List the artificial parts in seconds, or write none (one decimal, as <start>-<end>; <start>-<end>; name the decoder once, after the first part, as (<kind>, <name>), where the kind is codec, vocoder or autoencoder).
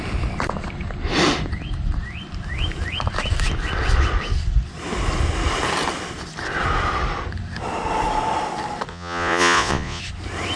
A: 8.9-10.0 (vocoder, Vocos)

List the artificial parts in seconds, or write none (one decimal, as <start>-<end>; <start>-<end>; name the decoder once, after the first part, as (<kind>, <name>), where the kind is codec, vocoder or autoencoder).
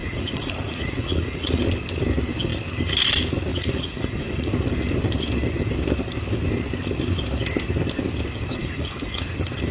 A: 0.0-1.6 (vocoder, Vocos); 3.5-4.5; 8.6-9.2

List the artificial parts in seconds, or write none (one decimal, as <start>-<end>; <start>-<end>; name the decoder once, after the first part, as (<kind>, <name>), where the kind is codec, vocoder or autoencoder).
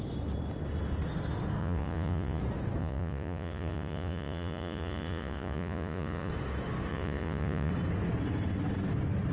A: 1.6-2.4 (vocoder, Vocos); 2.8-6.3; 6.9-7.7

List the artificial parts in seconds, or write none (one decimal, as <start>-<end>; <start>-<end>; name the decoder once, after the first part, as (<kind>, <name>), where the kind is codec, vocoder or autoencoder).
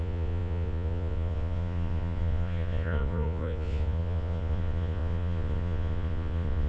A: 0.0-6.7 (vocoder, Vocos)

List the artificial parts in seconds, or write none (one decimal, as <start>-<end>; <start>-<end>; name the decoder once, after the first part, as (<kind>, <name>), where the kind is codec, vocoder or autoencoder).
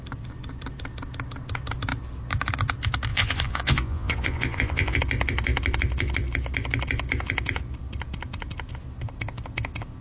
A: 3.1-5.0 (vocoder, Vocos)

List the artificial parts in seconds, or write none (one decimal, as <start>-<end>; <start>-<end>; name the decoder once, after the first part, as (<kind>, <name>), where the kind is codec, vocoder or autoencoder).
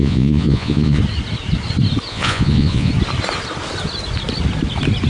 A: 0.0-1.0 (vocoder, Vocos); 2.1-2.9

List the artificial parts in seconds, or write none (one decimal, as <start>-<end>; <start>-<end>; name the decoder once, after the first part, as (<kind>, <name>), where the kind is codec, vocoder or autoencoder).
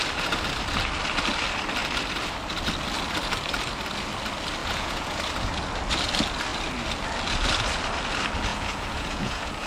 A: 4.6-5.2 (vocoder, Vocos); 8.5-9.7